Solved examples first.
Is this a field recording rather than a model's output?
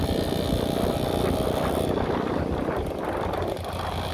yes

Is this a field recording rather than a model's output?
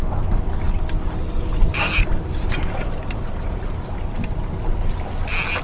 yes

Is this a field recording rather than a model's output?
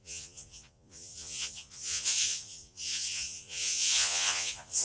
no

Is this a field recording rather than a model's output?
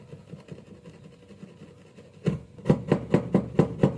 yes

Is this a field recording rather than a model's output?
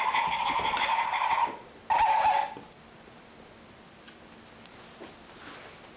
yes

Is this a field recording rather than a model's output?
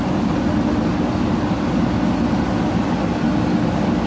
yes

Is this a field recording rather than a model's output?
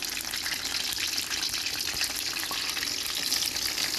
yes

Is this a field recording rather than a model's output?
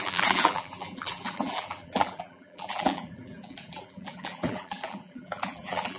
no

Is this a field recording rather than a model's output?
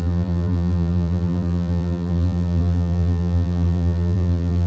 no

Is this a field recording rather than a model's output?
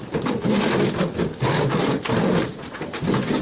yes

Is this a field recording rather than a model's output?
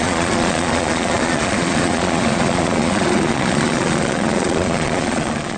no